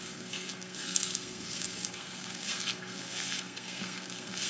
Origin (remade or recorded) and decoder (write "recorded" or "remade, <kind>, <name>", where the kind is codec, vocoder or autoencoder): remade, codec, SNAC